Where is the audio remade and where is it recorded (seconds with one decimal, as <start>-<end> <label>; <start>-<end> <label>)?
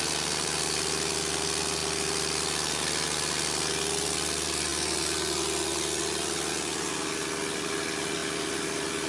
0.0-9.1 recorded